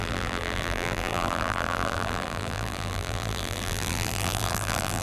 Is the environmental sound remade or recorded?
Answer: remade